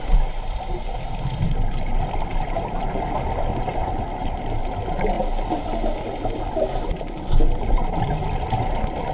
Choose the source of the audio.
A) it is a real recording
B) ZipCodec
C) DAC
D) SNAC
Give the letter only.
A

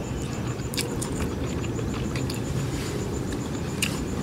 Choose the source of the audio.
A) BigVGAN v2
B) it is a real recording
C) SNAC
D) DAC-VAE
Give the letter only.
A